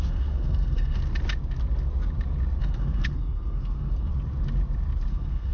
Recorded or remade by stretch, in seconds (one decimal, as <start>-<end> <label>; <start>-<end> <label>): 0.0-1.0 remade; 1.0-2.6 recorded; 2.6-4.1 remade; 4.1-5.1 recorded; 5.1-5.5 remade